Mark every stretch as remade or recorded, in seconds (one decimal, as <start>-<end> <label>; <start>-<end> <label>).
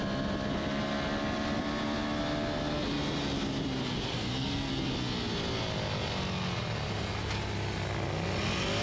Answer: 0.0-4.1 recorded; 4.1-4.7 remade; 4.7-8.8 recorded